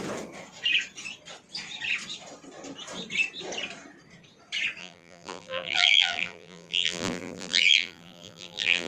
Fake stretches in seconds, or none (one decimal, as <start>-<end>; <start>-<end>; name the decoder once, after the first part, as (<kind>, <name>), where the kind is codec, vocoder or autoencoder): 4.8-8.9 (vocoder, BigVGAN v2)